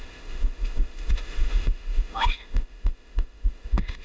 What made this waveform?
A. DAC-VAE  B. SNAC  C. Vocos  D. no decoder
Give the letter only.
A